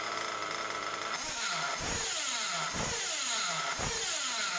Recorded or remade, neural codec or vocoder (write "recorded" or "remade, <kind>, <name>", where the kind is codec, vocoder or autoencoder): recorded